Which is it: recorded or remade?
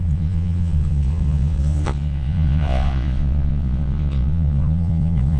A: remade